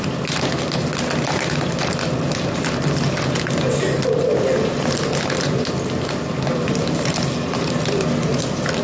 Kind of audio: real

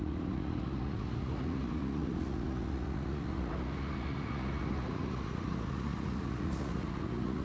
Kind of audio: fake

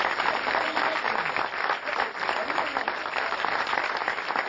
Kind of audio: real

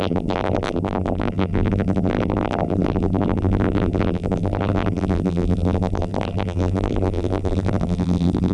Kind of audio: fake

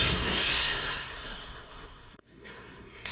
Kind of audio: fake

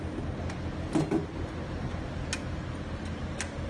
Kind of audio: real